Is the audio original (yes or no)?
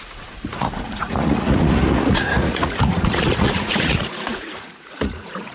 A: no